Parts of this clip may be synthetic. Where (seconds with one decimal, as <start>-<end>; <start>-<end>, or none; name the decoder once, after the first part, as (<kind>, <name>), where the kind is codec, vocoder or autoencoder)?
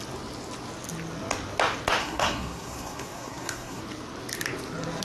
2.0-3.8 (codec, SNAC)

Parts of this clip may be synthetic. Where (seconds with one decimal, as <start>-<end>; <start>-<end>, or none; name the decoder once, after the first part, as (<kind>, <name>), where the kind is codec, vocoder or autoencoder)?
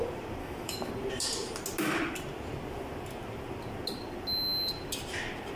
0.4-0.9 (autoencoder, DAC-VAE)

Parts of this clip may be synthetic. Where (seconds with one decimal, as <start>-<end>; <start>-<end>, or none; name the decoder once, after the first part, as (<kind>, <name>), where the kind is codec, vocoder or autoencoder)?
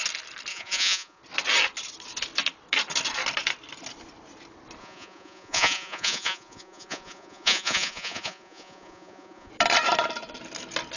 0.5-1.2 (vocoder, Vocos); 4.8-9.5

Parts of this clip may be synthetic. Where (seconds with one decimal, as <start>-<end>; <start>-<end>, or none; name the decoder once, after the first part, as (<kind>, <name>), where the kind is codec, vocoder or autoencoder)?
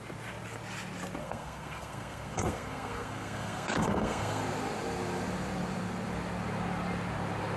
1.2-4.4 (codec, SNAC)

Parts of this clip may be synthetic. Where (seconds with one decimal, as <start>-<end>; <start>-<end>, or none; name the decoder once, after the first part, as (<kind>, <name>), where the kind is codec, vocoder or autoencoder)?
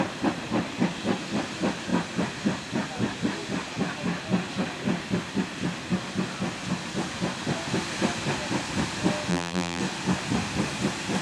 9.3-9.8 (vocoder, BigVGAN v2)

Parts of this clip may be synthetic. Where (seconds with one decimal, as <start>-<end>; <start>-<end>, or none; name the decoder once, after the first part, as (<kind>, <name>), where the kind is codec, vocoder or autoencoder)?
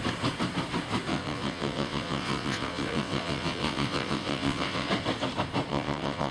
1.1-4.9 (vocoder, WaveNeXt); 5.7-6.3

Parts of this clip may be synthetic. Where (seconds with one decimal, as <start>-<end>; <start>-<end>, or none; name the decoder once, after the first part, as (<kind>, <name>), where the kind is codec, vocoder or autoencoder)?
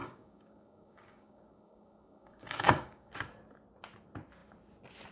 0.0-3.1 (codec, DAC)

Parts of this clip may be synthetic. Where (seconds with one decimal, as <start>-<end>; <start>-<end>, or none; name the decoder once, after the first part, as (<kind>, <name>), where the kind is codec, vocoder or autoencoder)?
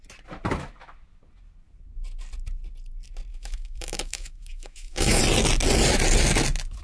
3.3-5.2 (autoencoder, DAC-VAE)